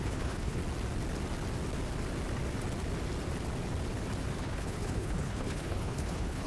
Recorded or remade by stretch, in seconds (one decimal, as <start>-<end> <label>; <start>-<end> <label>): 0.0-0.6 remade; 0.6-4.4 recorded; 4.4-6.5 remade